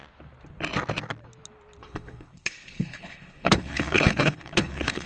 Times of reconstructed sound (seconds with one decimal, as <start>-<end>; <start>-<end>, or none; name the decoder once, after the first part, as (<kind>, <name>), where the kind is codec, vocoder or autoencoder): 1.8-5.1 (codec, HILCodec)